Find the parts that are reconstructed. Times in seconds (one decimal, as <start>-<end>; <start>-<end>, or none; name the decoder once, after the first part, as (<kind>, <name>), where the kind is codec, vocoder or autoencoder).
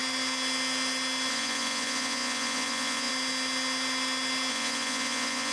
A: 1.3-3.1 (vocoder, Vocos); 4.5-5.5